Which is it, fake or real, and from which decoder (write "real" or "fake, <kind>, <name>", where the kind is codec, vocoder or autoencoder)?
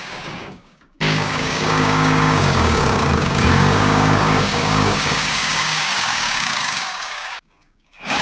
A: fake, codec, DAC